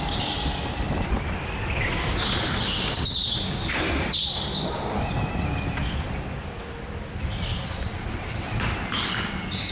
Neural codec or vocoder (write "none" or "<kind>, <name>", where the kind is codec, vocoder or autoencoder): none